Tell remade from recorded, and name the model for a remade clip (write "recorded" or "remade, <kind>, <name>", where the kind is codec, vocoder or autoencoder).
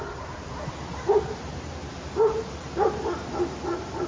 recorded